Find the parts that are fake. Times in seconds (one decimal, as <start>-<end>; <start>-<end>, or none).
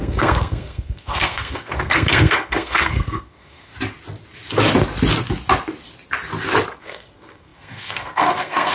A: 0.0-3.7; 6.8-8.7